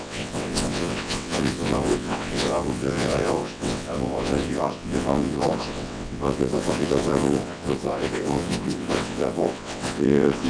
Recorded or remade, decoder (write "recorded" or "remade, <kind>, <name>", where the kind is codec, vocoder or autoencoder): remade, vocoder, WaveNeXt